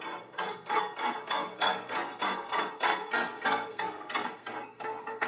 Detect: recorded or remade remade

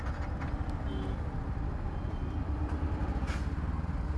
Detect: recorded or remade recorded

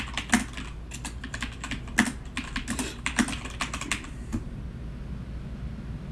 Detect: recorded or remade recorded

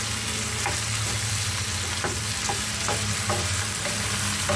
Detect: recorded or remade recorded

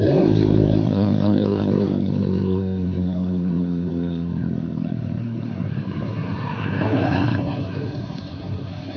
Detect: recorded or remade remade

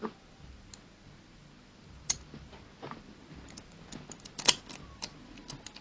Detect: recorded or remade recorded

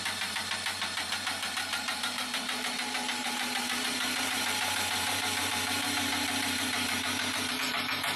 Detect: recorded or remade remade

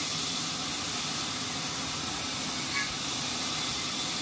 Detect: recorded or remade recorded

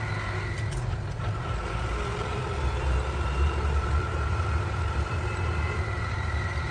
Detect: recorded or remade remade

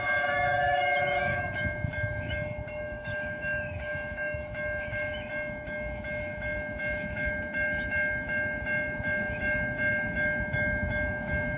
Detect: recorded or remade remade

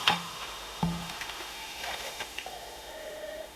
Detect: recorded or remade remade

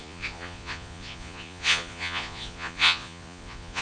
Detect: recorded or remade remade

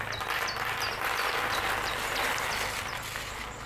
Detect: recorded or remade recorded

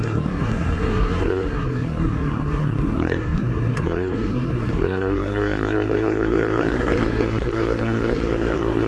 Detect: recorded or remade remade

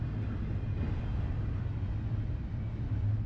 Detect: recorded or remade recorded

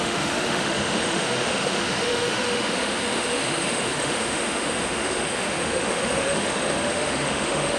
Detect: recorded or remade remade